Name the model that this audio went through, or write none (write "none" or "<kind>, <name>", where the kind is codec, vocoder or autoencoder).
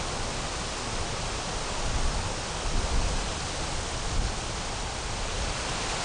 none